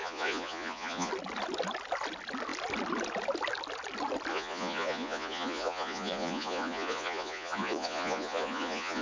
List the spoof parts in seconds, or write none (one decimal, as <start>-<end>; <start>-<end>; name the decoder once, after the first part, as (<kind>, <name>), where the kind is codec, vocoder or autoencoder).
0.0-1.1 (vocoder, Vocos); 4.3-9.0

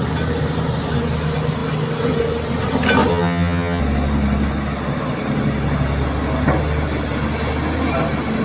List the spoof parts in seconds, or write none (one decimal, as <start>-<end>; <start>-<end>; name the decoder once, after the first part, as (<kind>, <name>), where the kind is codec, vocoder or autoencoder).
3.1-3.8 (vocoder, HiFi-GAN)

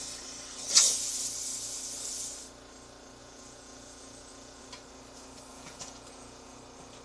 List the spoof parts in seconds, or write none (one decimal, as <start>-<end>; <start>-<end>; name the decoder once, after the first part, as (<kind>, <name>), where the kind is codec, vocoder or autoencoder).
3.2-4.6 (vocoder, Vocos); 5.5-6.6

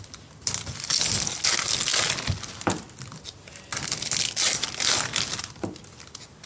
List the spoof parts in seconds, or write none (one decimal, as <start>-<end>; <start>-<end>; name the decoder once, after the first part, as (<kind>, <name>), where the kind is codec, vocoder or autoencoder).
none

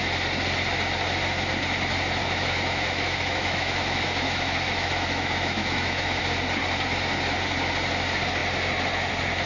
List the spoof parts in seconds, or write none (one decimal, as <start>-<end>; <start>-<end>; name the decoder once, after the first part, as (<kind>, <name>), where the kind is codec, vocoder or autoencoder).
2.2-6.2 (autoencoder, DAC-VAE)